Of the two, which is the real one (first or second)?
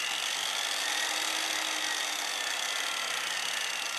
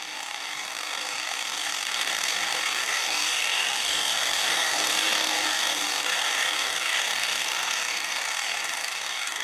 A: first